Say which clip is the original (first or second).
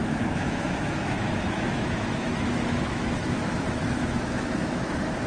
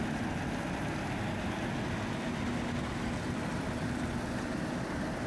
second